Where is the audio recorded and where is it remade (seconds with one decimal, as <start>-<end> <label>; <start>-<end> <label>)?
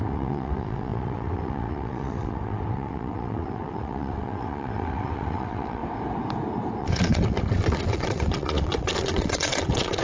0.0-5.8 remade; 5.8-6.8 recorded; 6.8-10.0 remade